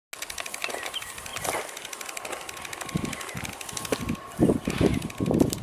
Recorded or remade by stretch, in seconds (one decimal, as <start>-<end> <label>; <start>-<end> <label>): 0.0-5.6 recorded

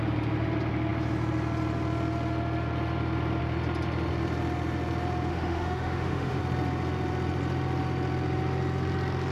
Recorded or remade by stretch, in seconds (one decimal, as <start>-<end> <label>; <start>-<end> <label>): 0.0-5.3 recorded; 5.3-6.4 remade; 6.4-9.3 recorded

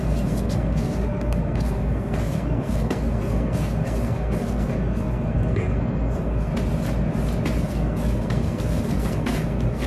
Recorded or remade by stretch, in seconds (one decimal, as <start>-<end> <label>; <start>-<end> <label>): 0.0-6.5 remade; 6.5-7.6 recorded; 7.6-9.9 remade